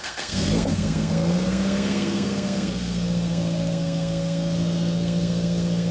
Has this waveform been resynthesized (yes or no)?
yes